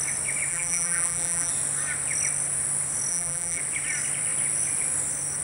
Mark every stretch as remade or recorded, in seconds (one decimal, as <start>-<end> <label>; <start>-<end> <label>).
0.0-0.5 recorded; 0.5-1.5 remade; 1.5-3.1 recorded; 3.1-3.6 remade; 3.6-5.4 recorded